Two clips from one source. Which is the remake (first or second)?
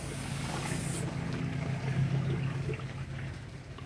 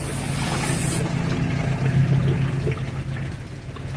first